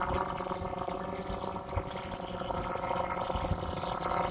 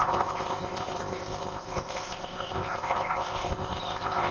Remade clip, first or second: second